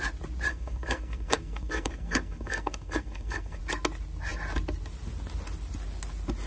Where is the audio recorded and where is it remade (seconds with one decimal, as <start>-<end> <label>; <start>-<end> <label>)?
0.0-0.5 recorded; 0.5-3.6 remade; 3.6-6.5 recorded